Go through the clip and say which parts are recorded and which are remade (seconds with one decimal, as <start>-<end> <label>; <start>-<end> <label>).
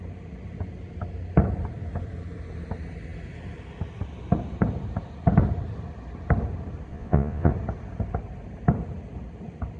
0.0-6.9 recorded; 6.9-7.5 remade; 7.5-9.8 recorded